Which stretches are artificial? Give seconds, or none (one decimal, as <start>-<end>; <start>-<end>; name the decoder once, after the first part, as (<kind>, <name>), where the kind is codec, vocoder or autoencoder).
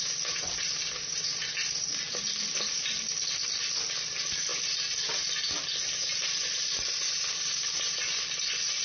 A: none